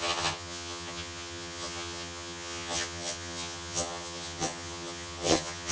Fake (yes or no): yes